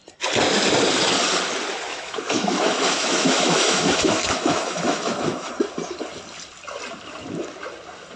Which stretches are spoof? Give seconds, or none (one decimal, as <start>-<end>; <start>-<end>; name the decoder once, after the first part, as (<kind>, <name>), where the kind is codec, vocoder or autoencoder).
1.9-5.5 (autoencoder, DAC-VAE)

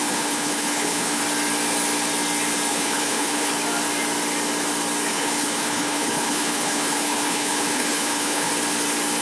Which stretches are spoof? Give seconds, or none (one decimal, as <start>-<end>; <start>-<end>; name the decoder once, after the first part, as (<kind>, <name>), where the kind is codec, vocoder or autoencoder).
0.0-1.2 (codec, HILCodec); 2.7-3.5; 5.1-8.5

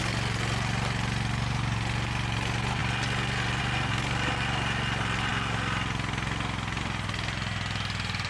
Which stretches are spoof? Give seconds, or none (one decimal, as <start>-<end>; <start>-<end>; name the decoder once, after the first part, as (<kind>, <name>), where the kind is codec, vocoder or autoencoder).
none

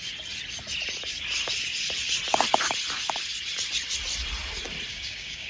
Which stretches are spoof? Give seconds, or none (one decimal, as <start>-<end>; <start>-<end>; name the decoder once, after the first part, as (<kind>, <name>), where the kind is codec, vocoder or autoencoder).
4.9-5.5 (codec, DAC)

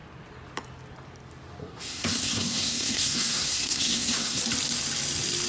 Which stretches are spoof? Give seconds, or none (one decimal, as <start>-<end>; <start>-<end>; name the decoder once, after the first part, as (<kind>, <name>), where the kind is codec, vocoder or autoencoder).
1.6-4.4 (codec, SNAC)